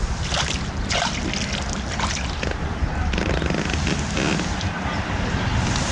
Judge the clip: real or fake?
real